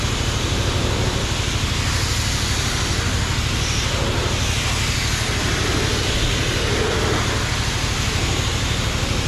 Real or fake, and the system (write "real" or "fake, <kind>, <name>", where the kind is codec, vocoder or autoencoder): real